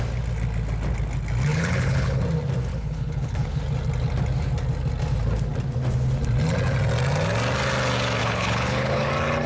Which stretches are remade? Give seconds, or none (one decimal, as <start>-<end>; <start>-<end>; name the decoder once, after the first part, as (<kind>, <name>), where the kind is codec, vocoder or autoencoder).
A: 1.5-2.2 (codec, HILCodec); 2.7-3.6; 8.2-9.1